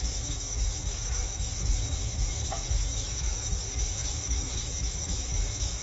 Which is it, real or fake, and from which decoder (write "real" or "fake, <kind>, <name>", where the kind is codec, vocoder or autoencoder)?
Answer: fake, autoencoder, DAC-VAE